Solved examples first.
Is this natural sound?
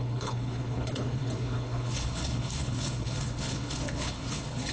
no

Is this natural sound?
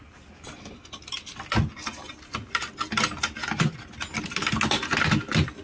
yes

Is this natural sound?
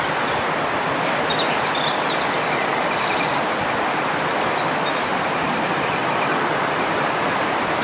yes